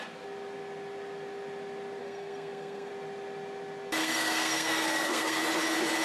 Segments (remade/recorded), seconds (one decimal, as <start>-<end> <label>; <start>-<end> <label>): 0.0-2.0 recorded; 2.0-2.9 remade; 2.9-4.0 recorded; 4.0-5.4 remade; 5.4-6.0 recorded

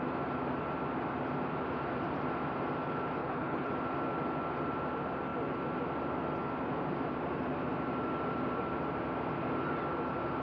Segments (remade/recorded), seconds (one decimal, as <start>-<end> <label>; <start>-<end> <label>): 0.0-3.2 recorded; 3.2-3.7 remade; 3.7-10.4 recorded

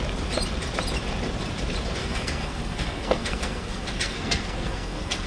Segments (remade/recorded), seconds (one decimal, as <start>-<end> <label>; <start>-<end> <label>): 0.0-2.0 recorded; 2.0-5.3 remade

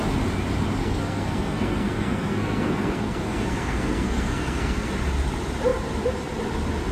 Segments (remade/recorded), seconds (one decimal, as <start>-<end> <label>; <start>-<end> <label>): 0.0-0.8 recorded; 0.8-4.9 remade; 4.9-6.9 recorded

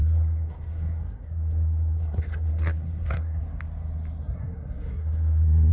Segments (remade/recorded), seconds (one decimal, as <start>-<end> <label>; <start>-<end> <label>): 0.0-3.4 remade; 3.4-4.2 recorded; 4.2-5.7 remade

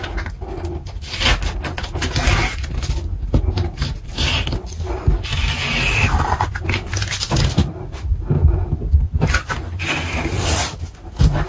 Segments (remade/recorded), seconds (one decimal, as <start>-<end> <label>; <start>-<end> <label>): 0.0-11.5 recorded

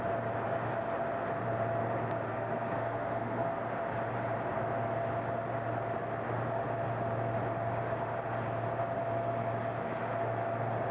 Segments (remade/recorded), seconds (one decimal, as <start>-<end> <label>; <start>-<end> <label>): 0.0-2.3 recorded; 2.3-3.6 remade; 3.6-10.9 recorded